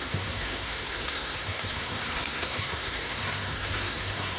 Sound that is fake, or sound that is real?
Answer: fake